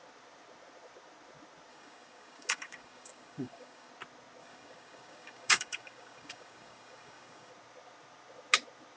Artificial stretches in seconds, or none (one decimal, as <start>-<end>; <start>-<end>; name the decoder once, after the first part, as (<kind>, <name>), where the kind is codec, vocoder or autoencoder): 1.7-3.9 (codec, DAC); 4.4-7.5